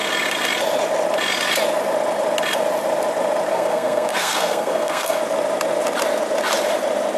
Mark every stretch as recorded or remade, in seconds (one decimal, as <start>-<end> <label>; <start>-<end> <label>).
0.0-3.5 recorded; 3.5-5.2 remade; 5.2-7.2 recorded